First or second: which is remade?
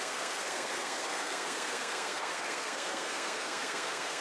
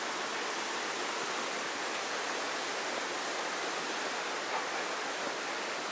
first